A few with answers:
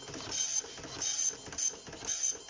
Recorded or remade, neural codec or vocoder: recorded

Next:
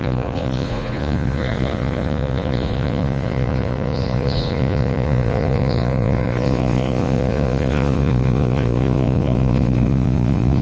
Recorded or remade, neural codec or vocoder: remade, vocoder, Vocos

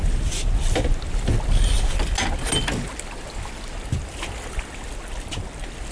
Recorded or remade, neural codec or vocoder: recorded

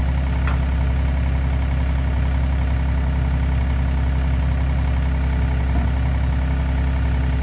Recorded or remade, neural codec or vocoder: recorded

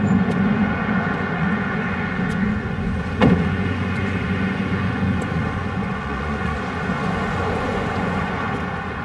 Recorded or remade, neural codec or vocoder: remade, vocoder, Vocos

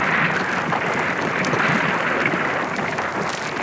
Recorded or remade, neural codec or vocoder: recorded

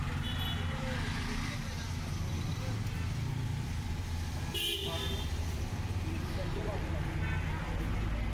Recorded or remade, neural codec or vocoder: recorded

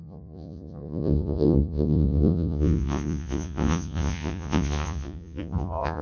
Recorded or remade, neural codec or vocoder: remade, vocoder, Vocos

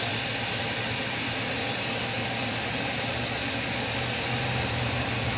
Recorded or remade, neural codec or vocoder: recorded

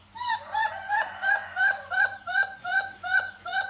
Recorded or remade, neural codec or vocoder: remade, vocoder, Vocos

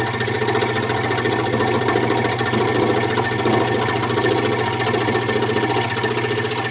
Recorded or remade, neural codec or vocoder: recorded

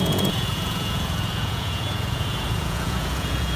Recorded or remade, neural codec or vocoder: remade, vocoder, Vocos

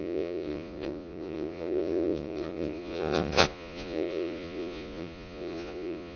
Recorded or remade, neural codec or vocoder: remade, vocoder, Vocos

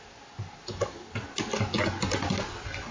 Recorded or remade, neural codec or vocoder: recorded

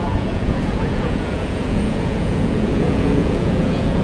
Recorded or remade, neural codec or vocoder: remade, vocoder, Vocos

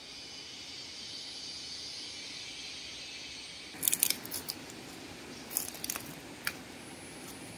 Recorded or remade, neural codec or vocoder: recorded